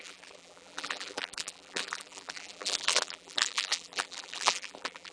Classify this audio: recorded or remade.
remade